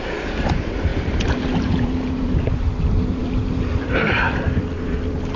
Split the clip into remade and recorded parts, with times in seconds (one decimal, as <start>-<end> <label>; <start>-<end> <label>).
0.0-5.4 remade